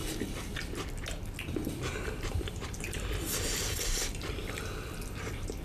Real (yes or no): yes